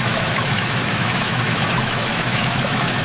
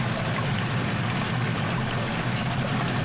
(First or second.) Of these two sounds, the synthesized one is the first